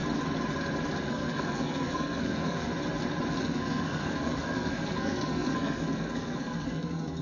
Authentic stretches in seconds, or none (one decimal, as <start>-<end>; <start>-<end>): 0.0-1.0; 2.7-3.4